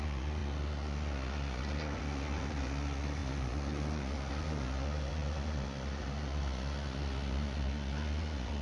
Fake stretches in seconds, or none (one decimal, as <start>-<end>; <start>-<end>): 0.0-8.6